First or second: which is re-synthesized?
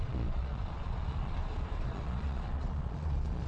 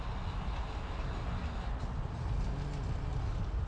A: first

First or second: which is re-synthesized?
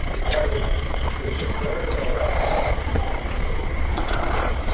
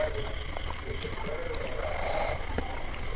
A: first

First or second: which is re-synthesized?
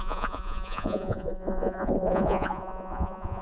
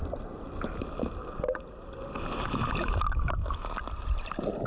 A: first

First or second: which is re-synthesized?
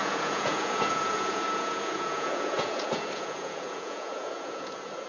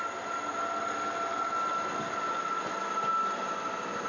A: first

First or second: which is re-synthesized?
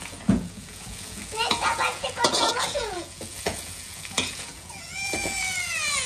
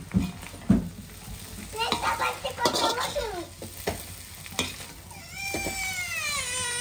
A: first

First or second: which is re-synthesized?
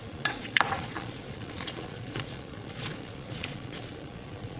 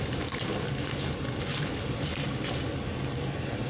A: first